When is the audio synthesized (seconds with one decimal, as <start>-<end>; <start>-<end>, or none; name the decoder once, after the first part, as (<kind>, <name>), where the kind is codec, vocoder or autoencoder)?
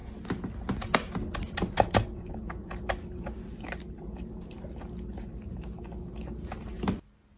none